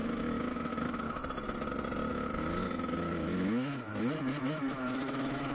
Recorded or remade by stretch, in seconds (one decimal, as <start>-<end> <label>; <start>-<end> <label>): 0.0-1.2 remade; 1.2-2.1 recorded; 2.1-3.9 remade; 3.9-4.4 recorded; 4.4-5.5 remade